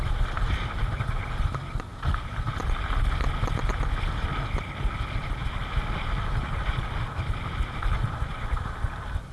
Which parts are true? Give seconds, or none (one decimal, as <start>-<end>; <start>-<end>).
0.0-9.3